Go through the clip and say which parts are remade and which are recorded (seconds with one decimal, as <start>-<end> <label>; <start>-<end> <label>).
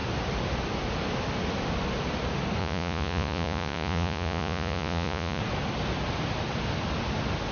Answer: 0.0-2.6 recorded; 2.6-5.4 remade; 5.4-7.5 recorded